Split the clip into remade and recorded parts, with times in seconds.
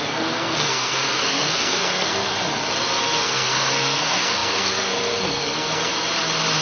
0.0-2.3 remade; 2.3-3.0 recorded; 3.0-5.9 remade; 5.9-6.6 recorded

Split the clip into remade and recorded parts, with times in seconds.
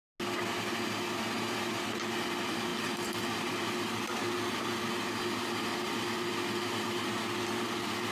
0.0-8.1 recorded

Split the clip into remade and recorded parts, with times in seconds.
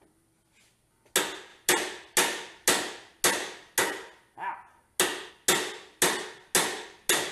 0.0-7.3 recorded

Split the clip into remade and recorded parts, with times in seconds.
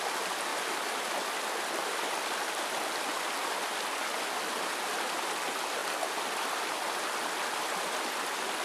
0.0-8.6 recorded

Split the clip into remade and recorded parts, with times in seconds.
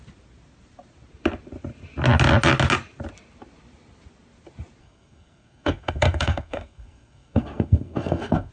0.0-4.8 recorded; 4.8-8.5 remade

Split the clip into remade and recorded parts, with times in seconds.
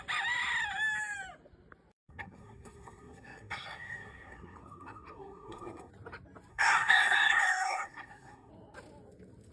0.0-2.0 recorded; 2.0-5.9 remade; 5.9-6.5 recorded; 6.5-8.5 remade; 8.5-9.5 recorded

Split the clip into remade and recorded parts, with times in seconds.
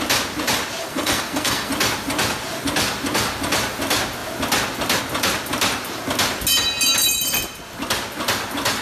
0.0-0.8 recorded; 0.8-1.7 remade; 1.7-8.8 recorded